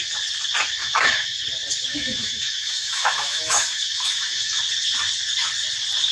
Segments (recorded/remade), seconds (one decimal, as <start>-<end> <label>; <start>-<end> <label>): 0.0-0.8 recorded; 0.8-1.4 remade; 1.4-1.9 recorded; 1.9-4.6 remade; 4.6-6.1 recorded